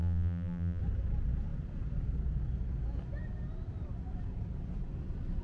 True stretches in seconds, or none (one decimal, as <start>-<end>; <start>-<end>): 0.8-5.4